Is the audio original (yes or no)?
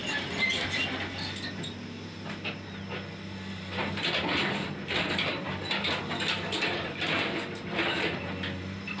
yes